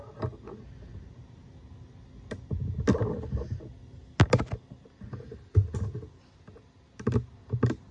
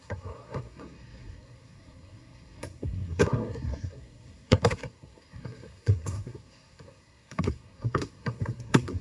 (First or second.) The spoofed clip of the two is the second